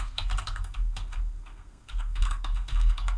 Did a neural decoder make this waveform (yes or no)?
yes